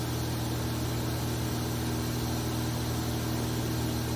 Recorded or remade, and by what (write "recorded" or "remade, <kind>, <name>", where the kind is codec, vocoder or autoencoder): recorded